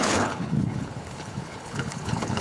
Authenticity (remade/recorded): remade